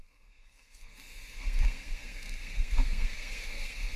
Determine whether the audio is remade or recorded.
remade